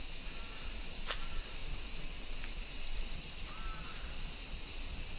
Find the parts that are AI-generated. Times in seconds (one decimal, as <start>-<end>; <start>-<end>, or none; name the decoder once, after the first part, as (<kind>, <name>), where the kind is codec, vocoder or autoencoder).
none